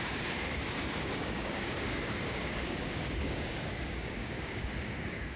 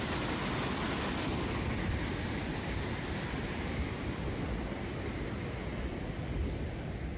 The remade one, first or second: first